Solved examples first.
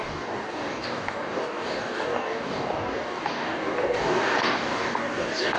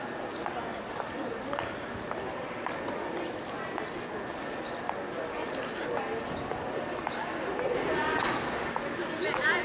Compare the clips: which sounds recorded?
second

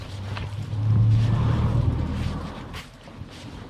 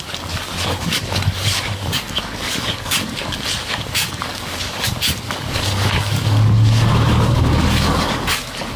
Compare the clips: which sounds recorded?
first